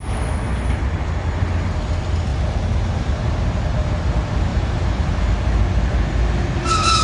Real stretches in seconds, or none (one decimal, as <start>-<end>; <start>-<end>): 0.0-4.5; 5.2-7.0